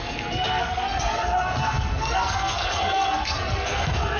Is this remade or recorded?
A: remade